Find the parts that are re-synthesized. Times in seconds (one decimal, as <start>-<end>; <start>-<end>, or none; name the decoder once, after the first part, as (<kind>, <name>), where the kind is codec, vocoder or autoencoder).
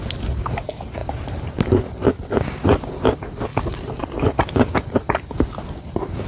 none